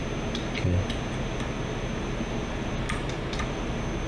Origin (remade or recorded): recorded